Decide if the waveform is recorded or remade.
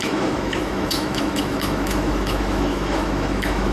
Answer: remade